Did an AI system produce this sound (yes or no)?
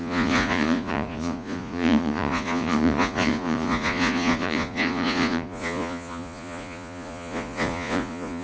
yes